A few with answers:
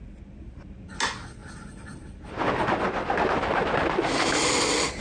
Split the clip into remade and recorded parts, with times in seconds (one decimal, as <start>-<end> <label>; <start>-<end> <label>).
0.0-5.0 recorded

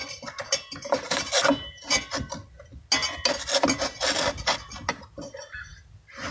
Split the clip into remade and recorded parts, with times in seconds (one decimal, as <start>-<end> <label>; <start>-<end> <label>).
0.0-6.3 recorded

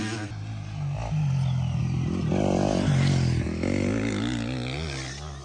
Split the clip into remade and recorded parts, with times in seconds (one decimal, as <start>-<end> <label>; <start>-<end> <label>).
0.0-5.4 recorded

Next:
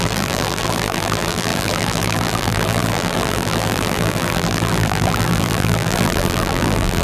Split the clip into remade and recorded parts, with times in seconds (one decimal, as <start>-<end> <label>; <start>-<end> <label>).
0.0-7.0 remade

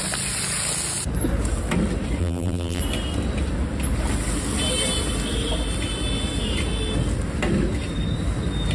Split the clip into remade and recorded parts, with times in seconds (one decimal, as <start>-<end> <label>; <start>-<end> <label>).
0.0-2.2 recorded; 2.2-2.8 remade; 2.8-8.7 recorded